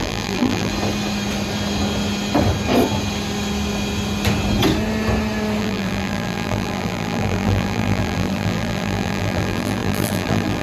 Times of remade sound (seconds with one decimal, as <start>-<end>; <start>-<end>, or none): 0.0-0.7; 5.6-10.6